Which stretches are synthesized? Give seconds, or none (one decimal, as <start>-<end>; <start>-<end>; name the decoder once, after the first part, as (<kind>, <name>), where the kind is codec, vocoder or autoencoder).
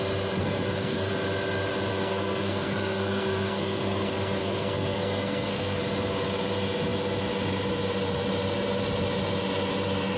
0.4-1.1 (codec, SNAC); 1.9-5.8